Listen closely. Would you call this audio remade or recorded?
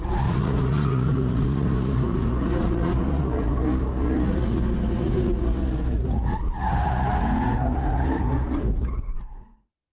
remade